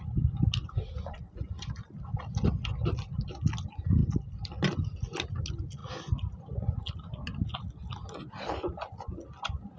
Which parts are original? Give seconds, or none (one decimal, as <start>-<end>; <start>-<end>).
0.0-9.8